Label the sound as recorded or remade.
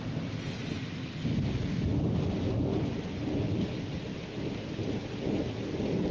recorded